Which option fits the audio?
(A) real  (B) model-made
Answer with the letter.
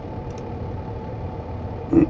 A